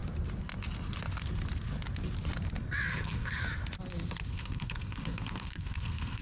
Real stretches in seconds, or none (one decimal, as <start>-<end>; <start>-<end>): 0.0-2.9; 3.4-4.3

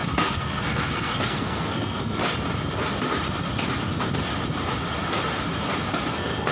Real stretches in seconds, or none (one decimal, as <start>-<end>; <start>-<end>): 2.2-6.1

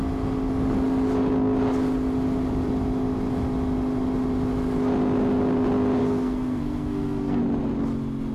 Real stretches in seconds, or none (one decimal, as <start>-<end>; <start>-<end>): 0.0-6.0; 7.4-8.3

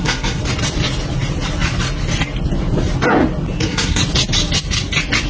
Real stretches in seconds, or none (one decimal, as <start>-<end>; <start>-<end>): 0.4-3.6; 4.0-5.3

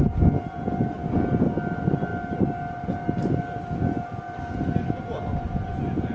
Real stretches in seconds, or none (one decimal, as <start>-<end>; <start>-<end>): 0.0-6.1